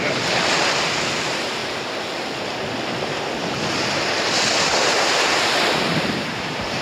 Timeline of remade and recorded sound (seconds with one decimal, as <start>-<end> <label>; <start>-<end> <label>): 0.0-1.6 remade; 1.6-4.8 recorded; 4.8-6.8 remade